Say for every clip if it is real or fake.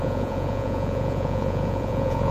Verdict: fake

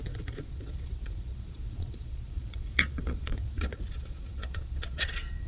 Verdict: fake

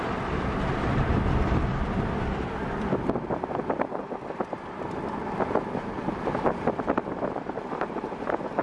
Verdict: fake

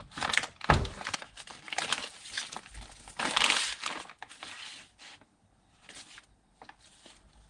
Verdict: real